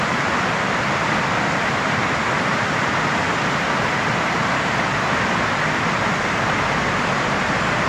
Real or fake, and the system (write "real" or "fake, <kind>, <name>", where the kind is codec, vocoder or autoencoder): real